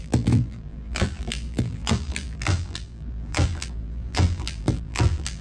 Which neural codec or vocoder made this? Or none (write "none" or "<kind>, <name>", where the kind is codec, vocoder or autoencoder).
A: vocoder, BigVGAN v2